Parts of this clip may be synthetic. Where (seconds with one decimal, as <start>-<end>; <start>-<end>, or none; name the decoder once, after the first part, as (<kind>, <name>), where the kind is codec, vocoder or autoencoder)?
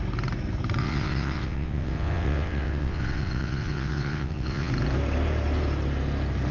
0.8-4.7 (vocoder, WaveNeXt)